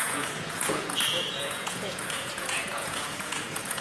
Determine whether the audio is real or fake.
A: fake